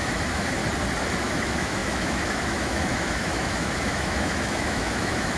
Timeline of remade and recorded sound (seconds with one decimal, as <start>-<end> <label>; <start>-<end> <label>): 0.0-0.6 remade; 0.6-1.2 recorded; 1.2-5.4 remade

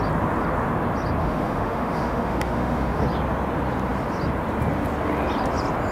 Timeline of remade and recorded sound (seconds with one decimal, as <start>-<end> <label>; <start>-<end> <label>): 0.0-1.2 recorded; 1.2-3.0 remade; 3.0-5.9 recorded